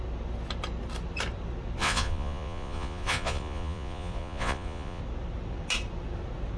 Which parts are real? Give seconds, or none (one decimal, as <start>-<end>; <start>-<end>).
0.0-1.8; 5.0-6.6